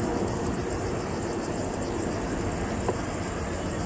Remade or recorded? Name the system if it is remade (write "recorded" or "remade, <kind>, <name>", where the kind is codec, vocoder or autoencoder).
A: recorded